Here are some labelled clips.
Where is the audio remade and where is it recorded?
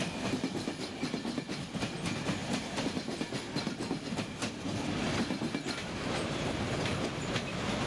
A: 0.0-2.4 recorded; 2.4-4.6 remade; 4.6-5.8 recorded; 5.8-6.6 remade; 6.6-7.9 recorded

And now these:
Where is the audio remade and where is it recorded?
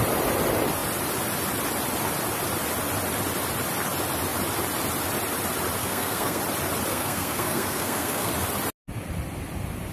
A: 0.0-5.8 recorded; 5.8-6.4 remade; 6.4-6.9 recorded; 6.9-8.3 remade; 8.3-9.9 recorded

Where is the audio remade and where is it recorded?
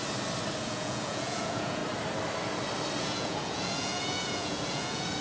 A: 0.0-0.6 recorded; 0.6-1.8 remade; 1.8-3.0 recorded; 3.0-5.2 remade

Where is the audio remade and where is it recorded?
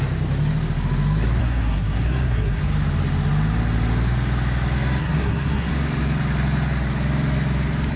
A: 0.0-1.4 recorded; 1.4-2.6 remade; 2.6-5.0 recorded; 5.0-5.7 remade; 5.7-8.0 recorded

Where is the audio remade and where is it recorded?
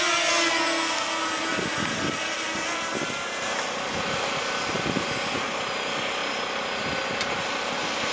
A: 0.0-1.5 recorded; 1.5-2.0 remade; 2.0-8.1 recorded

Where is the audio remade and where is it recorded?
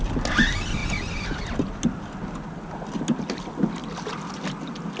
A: 0.0-5.0 recorded